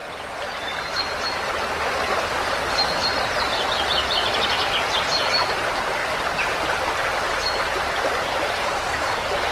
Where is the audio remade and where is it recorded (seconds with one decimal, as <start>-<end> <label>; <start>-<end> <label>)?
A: 0.0-9.5 recorded